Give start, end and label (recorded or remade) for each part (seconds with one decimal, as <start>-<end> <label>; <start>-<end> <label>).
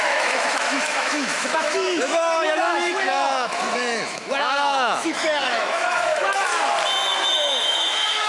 0.0-6.5 remade; 6.5-7.3 recorded; 7.3-8.3 remade